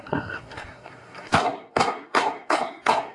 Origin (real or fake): fake